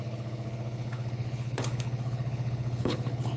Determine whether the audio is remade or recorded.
remade